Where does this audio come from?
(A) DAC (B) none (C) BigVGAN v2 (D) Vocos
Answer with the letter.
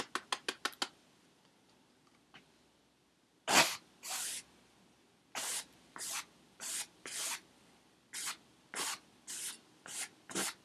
B